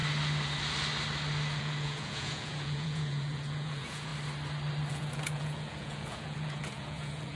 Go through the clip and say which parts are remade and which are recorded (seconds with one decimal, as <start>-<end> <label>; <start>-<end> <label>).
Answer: 0.0-1.6 recorded; 1.6-4.1 remade; 4.1-4.9 recorded; 4.9-7.4 remade

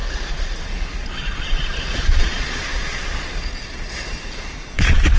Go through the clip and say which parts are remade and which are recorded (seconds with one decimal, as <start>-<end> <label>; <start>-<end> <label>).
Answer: 0.0-5.2 remade

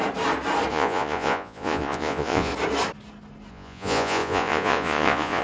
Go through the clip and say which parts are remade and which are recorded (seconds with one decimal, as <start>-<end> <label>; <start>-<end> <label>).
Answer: 0.0-0.7 recorded; 0.7-2.5 remade; 2.5-3.5 recorded; 3.5-5.4 remade

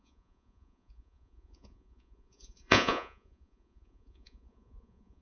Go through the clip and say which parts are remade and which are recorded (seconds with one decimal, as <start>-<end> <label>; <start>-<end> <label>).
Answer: 0.0-5.2 remade

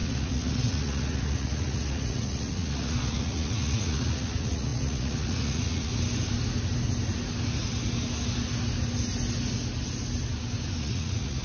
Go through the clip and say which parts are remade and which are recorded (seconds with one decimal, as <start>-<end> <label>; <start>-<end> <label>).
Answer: 0.0-5.9 remade; 5.9-10.8 recorded; 10.8-11.4 remade